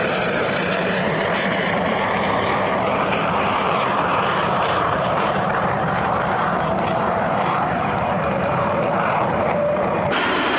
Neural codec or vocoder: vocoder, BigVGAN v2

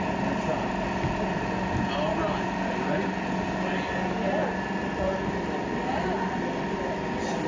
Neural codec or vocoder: none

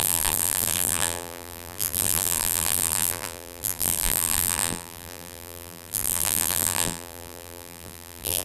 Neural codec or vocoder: vocoder, BigVGAN v2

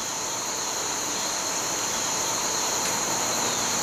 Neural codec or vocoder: vocoder, BigVGAN v2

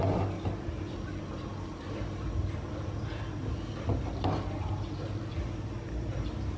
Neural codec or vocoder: none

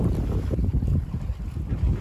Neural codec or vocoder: none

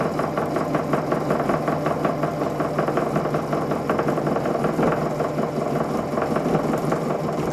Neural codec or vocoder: none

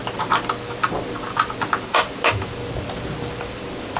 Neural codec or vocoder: vocoder, BigVGAN v2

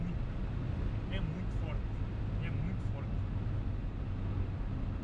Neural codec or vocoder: none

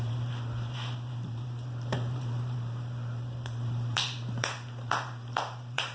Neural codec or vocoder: vocoder, BigVGAN v2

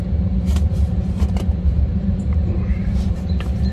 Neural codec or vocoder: vocoder, BigVGAN v2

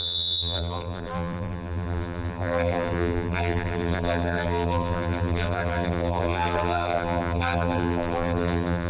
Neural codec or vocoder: vocoder, BigVGAN v2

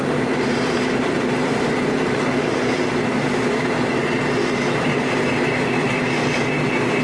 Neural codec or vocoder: vocoder, BigVGAN v2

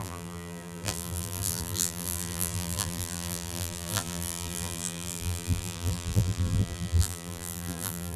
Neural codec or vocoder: vocoder, BigVGAN v2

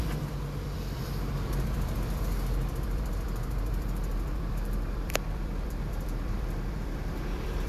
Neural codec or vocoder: vocoder, BigVGAN v2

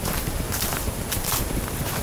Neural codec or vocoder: vocoder, BigVGAN v2